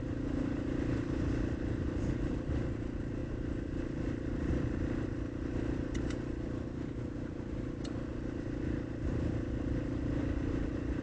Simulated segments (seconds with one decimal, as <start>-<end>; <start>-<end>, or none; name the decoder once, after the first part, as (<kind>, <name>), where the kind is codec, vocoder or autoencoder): none